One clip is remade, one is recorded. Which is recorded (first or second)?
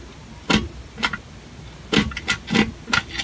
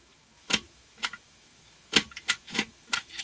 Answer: first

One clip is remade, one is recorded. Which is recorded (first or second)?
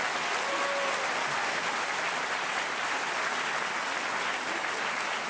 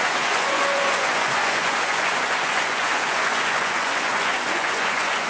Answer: first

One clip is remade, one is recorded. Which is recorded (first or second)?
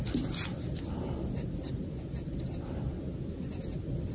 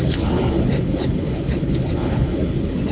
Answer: first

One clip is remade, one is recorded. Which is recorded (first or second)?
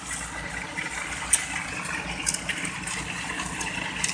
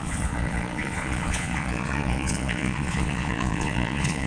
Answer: first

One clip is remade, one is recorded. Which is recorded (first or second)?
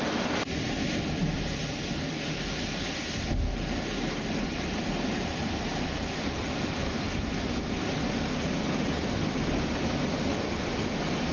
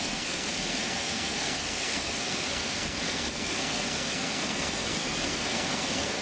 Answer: first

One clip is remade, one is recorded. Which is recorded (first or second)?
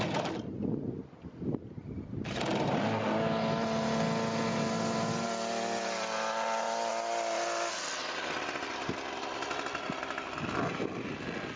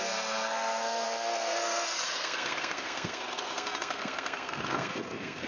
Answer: first